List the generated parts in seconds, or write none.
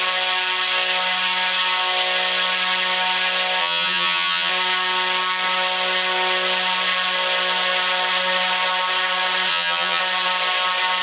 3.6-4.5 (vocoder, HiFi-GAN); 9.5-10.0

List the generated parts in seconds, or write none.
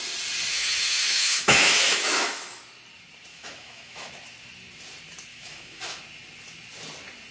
0.5-2.6 (autoencoder, DAC-VAE); 3.3-4.1; 5.3-6.0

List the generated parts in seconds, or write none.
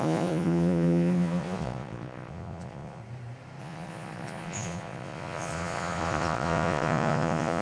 0.0-3.0 (vocoder, Vocos); 3.6-7.6